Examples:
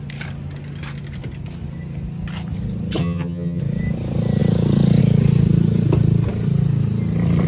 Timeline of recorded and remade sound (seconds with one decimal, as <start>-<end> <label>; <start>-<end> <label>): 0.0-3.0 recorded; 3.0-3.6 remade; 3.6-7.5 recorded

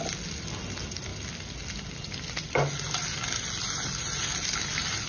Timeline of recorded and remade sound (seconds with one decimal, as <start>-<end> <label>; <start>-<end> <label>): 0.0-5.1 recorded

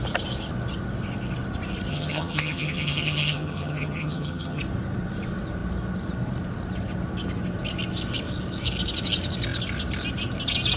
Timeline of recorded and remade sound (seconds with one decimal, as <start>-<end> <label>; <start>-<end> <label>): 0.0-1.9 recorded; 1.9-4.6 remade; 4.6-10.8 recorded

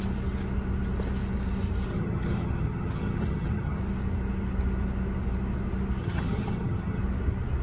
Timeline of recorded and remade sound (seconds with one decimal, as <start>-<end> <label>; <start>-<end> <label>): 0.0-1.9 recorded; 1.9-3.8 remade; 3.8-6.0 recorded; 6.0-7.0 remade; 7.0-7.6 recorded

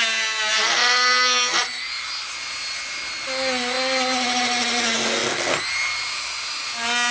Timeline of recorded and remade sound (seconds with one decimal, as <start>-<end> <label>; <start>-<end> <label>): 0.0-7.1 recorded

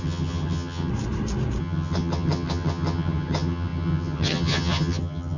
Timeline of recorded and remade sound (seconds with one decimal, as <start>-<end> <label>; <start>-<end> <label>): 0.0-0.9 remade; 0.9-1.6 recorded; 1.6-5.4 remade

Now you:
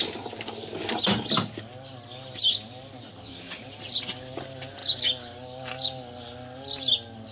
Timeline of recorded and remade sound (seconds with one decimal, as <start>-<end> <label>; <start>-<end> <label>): 0.0-7.3 recorded

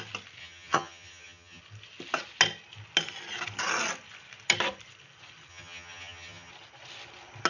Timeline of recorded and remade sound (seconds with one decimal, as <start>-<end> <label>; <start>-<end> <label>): 0.0-0.4 recorded; 0.4-1.6 remade; 1.6-5.5 recorded; 5.5-6.5 remade; 6.5-7.5 recorded